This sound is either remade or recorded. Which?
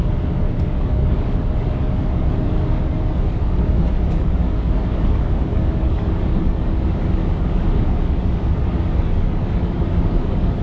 remade